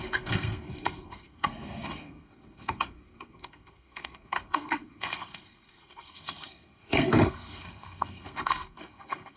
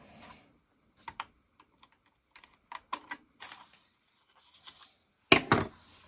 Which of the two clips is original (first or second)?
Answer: second